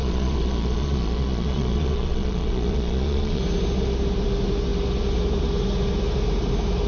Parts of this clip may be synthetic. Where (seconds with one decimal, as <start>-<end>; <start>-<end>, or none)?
0.0-3.4